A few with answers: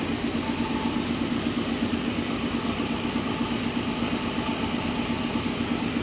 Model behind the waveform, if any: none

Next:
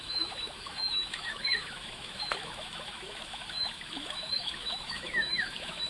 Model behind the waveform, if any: autoencoder, DAC-VAE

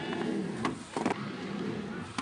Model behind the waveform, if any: none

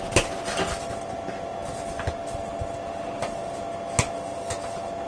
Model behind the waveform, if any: none